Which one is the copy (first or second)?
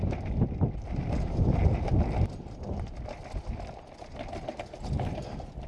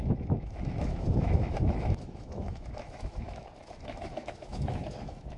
second